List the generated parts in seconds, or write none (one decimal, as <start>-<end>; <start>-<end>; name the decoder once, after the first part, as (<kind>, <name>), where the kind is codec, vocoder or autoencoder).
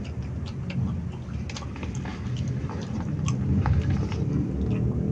2.1-3.0 (vocoder, BigVGAN v2)